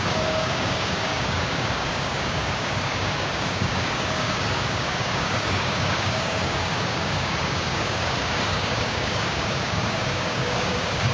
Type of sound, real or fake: fake